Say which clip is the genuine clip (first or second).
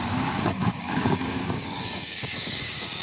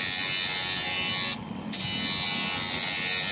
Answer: second